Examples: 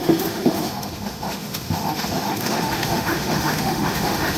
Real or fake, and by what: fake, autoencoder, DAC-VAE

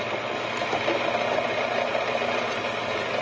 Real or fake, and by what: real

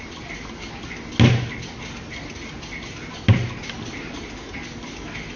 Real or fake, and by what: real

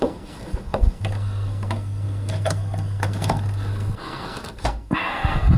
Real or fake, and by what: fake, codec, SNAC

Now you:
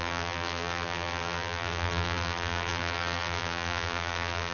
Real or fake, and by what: fake, vocoder, BigVGAN v2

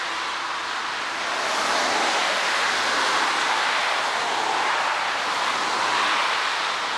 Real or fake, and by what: real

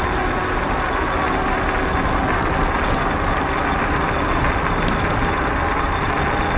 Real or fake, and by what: real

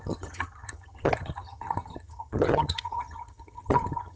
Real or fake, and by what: fake, vocoder, HiFi-GAN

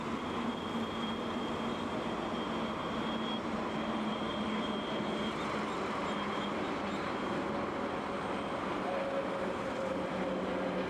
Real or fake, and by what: real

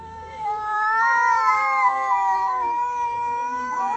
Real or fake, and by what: fake, codec, DAC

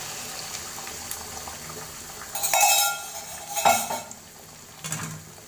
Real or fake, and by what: real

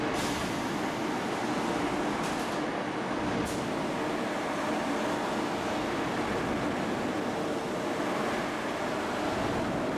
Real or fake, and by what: real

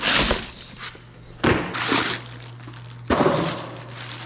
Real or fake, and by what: real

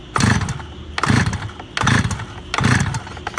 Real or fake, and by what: real